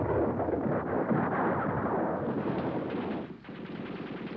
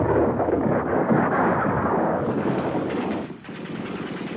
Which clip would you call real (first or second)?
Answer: first